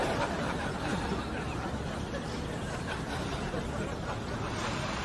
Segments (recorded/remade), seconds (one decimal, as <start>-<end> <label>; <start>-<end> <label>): 0.0-0.9 recorded; 0.9-3.9 remade; 3.9-5.0 recorded